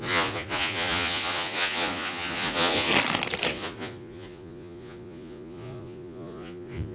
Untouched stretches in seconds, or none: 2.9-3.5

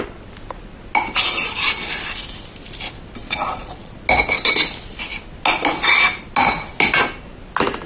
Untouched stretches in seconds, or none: 0.0-3.2; 3.9-7.9

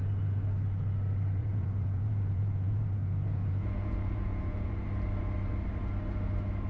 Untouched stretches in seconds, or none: 0.0-1.4; 4.7-6.7

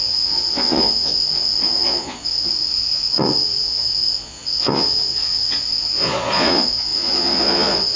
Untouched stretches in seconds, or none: none